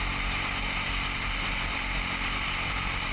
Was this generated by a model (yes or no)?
no